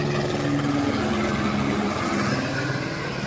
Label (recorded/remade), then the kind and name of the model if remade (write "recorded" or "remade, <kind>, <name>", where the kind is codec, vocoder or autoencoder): recorded